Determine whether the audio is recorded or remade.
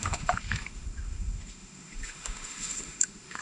remade